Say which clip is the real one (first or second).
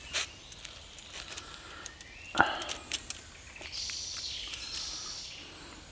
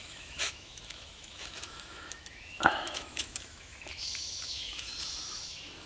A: first